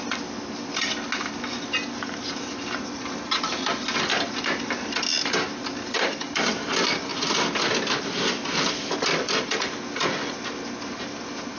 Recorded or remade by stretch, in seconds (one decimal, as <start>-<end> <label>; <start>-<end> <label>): 0.0-11.6 recorded